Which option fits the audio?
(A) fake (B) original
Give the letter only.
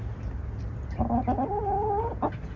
B